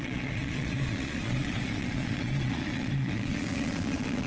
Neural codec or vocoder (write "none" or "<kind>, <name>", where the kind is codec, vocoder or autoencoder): vocoder, Vocos